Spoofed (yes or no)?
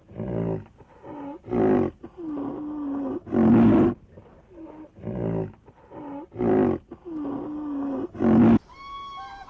no